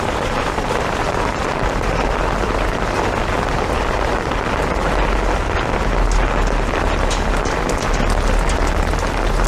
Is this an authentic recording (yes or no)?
yes